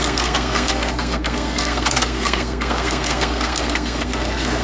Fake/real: fake